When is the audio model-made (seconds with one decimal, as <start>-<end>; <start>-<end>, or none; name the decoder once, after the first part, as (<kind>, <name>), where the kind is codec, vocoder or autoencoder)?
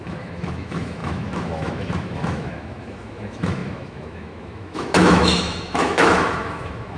0.0-7.0 (autoencoder, DAC-VAE)